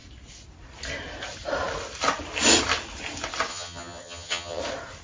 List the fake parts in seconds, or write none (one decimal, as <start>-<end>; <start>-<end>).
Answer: 3.5-4.6